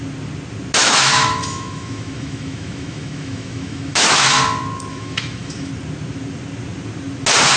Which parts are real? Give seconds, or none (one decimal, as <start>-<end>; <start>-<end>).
0.0-0.8; 4.4-4.9; 5.7-7.6